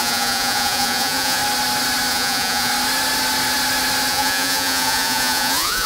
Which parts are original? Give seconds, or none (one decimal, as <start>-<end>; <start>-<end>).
1.4-2.1; 2.7-4.1